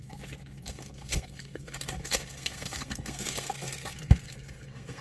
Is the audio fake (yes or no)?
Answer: yes